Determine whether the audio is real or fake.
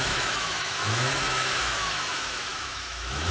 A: fake